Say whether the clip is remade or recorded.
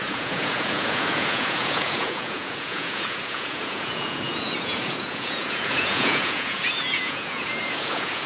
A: remade